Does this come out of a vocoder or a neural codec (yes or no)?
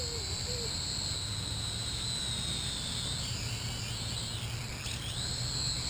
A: no